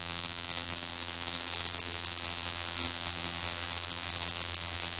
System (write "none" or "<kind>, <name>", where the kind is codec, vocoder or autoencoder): vocoder, BigVGAN v2